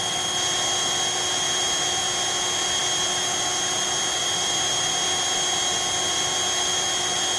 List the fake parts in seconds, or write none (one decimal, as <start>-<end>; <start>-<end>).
none